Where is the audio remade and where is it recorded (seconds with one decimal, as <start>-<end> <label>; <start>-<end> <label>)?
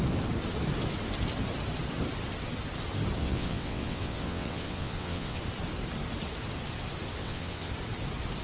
0.0-3.2 recorded; 3.2-5.4 remade; 5.4-7.2 recorded; 7.2-7.7 remade; 7.7-8.4 recorded